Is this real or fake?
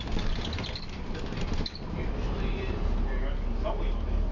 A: real